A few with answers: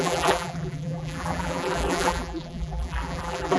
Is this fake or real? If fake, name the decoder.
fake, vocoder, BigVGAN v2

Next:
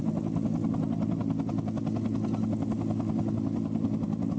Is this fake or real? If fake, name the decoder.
real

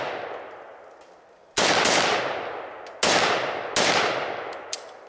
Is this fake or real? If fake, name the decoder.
real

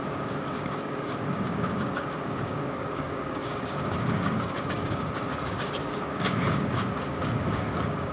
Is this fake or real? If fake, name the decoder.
fake, codec, DAC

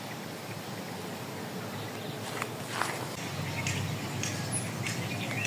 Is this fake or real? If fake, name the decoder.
real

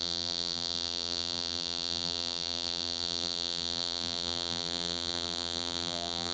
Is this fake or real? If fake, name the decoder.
fake, vocoder, BigVGAN v2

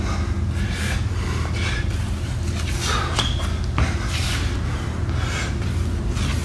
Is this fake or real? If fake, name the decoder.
real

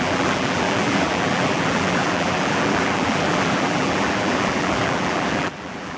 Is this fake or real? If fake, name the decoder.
fake, vocoder, BigVGAN v2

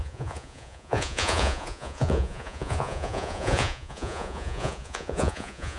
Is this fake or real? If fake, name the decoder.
fake, vocoder, Vocos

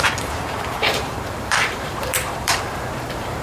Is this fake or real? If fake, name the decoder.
fake, vocoder, BigVGAN v2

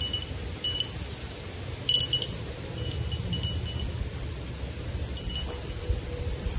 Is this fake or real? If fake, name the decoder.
real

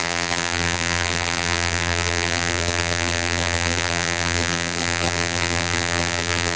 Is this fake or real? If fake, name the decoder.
fake, vocoder, BigVGAN v2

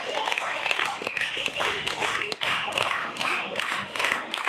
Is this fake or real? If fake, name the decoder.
fake, autoencoder, DAC-VAE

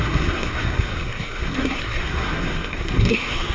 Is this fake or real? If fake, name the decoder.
fake, codec, SNAC